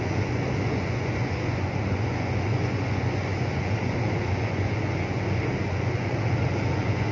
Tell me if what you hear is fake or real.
fake